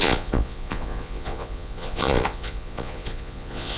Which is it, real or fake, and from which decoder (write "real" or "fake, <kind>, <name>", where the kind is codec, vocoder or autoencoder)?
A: fake, vocoder, Vocos